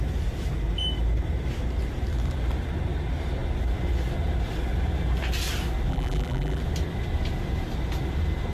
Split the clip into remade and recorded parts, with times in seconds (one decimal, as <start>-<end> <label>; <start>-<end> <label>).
0.0-5.9 recorded; 5.9-6.6 remade; 6.6-8.5 recorded